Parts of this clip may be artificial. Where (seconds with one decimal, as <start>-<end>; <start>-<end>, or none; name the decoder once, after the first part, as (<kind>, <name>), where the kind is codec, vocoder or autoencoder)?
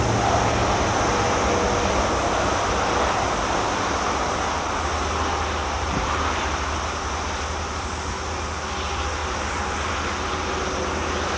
5.6-6.4 (vocoder, BigVGAN v2); 9.2-9.9